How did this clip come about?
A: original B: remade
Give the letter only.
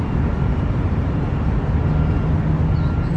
A